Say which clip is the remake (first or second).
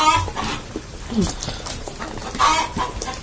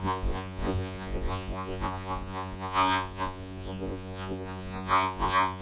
second